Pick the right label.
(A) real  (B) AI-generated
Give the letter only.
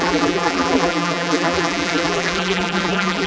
B